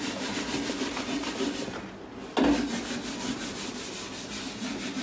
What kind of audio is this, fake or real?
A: real